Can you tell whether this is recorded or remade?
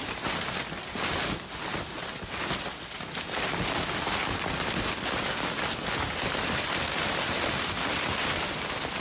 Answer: recorded